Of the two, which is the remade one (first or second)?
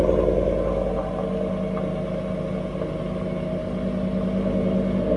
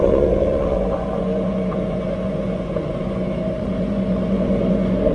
second